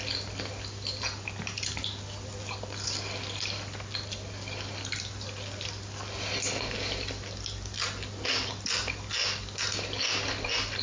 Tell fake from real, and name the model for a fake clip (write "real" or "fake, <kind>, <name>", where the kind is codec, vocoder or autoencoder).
real